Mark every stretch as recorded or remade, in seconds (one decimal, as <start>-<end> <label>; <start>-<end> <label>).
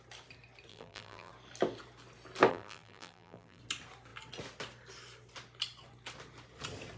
0.0-0.7 recorded; 0.7-1.3 remade; 1.3-2.5 recorded; 2.5-3.6 remade; 3.6-7.0 recorded